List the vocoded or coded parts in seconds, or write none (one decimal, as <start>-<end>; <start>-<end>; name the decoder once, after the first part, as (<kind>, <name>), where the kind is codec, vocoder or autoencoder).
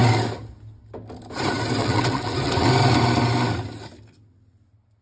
1.8-2.7 (vocoder, WaveNeXt)